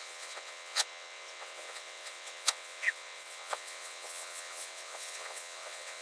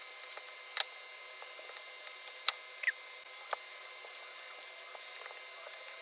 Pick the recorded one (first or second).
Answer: second